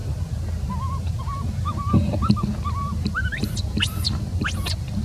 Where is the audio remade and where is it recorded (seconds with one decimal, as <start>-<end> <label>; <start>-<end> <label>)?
0.0-5.0 recorded